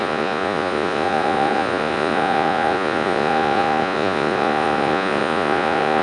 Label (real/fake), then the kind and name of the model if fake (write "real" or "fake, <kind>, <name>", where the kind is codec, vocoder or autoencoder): fake, vocoder, Vocos